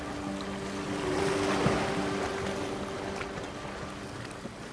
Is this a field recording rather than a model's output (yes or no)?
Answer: yes